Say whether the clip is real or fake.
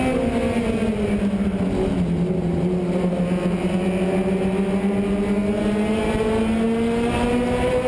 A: real